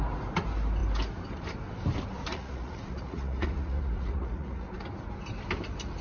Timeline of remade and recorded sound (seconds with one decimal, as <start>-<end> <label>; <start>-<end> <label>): 0.0-2.3 recorded; 2.3-4.8 remade; 4.8-6.0 recorded